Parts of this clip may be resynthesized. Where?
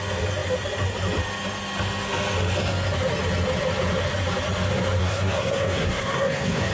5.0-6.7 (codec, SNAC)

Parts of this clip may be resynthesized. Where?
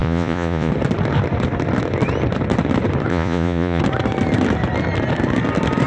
0.0-0.7 (vocoder, Vocos); 3.1-3.8